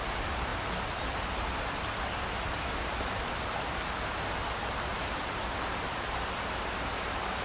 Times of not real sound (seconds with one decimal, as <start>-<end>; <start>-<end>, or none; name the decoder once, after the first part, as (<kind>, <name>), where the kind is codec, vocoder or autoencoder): 4.9-5.4 (vocoder, BigVGAN v2)